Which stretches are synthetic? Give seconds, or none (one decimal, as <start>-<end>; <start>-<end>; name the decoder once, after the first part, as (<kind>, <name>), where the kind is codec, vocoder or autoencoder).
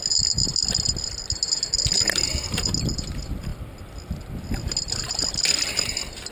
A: none